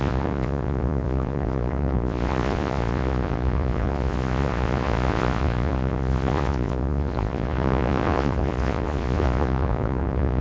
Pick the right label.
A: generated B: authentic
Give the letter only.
A